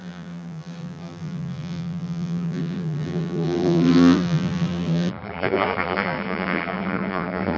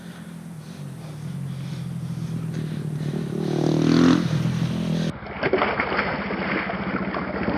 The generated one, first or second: first